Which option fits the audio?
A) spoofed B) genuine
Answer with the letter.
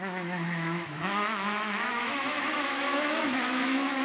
A